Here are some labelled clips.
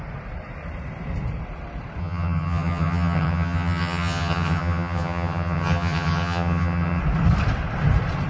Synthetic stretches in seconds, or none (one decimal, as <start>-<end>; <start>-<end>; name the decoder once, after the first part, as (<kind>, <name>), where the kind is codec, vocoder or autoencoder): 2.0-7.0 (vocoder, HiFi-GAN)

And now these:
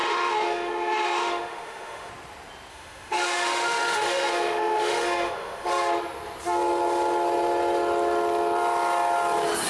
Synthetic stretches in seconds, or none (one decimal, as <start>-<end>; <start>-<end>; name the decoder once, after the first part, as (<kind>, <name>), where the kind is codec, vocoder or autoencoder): 0.0-2.1 (autoencoder, DAC-VAE); 2.7-5.7

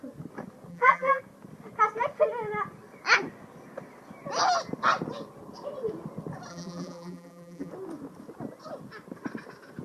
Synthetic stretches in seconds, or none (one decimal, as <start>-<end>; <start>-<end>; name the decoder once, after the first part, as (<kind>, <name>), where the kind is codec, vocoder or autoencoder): 0.7-1.2 (vocoder, BigVGAN v2); 6.5-7.7

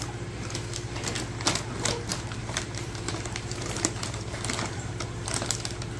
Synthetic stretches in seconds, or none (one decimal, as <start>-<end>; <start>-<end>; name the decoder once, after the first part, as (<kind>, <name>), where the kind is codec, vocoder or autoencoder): 2.1-4.9 (vocoder, BigVGAN v2)

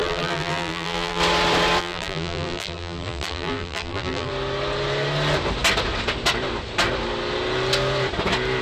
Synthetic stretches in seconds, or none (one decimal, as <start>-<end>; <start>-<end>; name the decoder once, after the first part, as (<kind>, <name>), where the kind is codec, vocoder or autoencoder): 0.0-1.2 (vocoder, BigVGAN v2); 1.8-4.3